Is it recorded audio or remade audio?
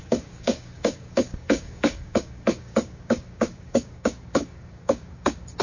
remade